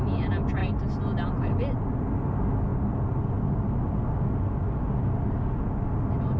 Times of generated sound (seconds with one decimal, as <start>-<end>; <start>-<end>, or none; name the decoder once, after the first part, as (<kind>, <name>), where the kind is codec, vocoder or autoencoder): none